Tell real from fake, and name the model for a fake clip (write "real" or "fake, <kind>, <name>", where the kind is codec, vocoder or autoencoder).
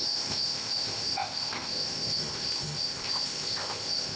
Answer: fake, codec, ZipCodec